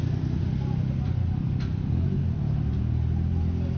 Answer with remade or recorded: recorded